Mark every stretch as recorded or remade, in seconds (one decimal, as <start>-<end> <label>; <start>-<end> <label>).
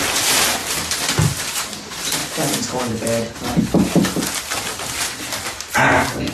0.0-6.3 recorded